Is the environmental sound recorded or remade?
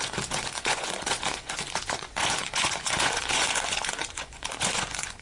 remade